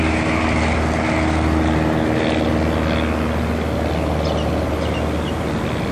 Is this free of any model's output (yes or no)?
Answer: yes